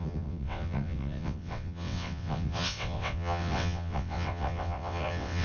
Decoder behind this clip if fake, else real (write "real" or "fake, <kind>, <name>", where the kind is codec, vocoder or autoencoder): fake, vocoder, WaveNeXt